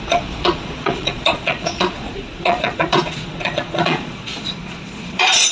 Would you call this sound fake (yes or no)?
yes